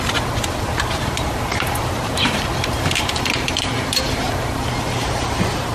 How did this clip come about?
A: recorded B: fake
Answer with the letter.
B